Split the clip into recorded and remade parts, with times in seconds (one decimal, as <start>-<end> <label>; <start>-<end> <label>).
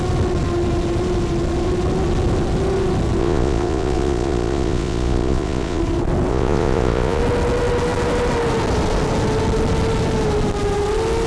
0.0-3.2 recorded; 3.2-5.8 remade; 5.8-6.3 recorded; 6.3-7.2 remade; 7.2-11.3 recorded